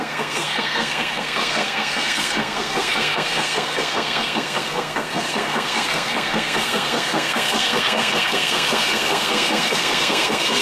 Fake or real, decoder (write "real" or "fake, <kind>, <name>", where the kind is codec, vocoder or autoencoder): fake, codec, SNAC